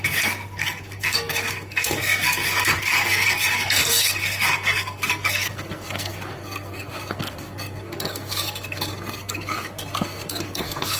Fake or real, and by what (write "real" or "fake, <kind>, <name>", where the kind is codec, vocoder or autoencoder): fake, codec, SNAC